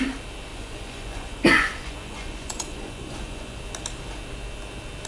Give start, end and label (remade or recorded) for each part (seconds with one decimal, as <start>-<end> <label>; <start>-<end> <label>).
0.0-0.5 recorded; 0.5-3.6 remade; 3.6-5.1 recorded